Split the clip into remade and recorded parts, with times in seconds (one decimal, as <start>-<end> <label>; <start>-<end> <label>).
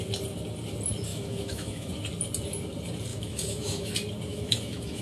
0.0-1.1 recorded; 1.1-1.9 remade; 1.9-3.1 recorded; 3.1-3.9 remade; 3.9-4.3 recorded; 4.3-5.0 remade